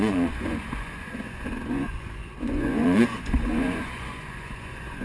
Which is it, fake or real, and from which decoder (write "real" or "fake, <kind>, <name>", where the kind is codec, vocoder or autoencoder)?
fake, vocoder, Vocos